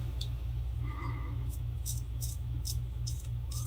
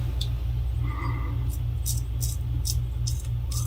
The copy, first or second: first